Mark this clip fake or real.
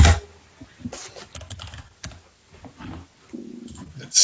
real